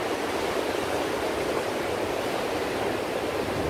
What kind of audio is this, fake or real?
real